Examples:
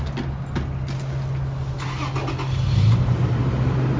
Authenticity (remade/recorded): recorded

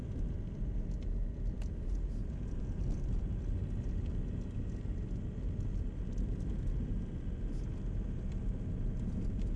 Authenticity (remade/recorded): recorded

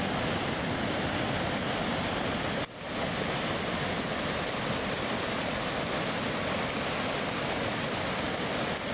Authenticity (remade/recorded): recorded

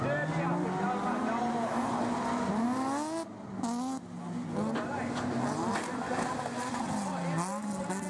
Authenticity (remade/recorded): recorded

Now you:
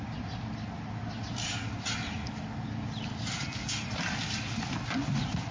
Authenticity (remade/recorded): recorded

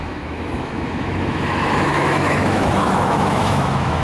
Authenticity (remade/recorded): remade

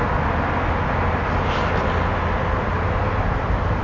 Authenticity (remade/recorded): recorded